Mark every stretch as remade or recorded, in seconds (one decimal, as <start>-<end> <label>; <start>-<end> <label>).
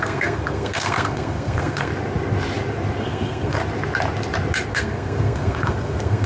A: 0.0-1.9 remade; 1.9-3.0 recorded; 3.0-3.6 remade; 3.6-4.7 recorded; 4.7-6.3 remade